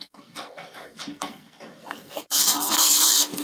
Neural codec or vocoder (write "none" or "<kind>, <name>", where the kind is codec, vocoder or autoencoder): codec, SNAC